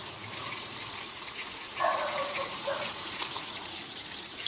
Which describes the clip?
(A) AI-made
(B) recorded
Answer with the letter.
A